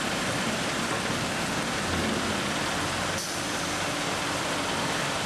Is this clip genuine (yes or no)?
yes